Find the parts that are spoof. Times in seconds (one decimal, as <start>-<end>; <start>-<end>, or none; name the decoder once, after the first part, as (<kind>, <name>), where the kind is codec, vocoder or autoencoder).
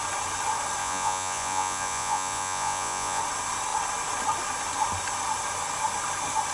0.8-3.2 (vocoder, Vocos)